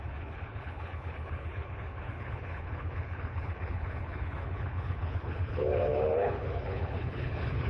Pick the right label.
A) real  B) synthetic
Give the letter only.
B